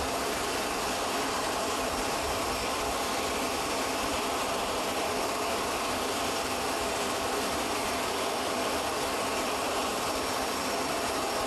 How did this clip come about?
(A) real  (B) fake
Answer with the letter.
B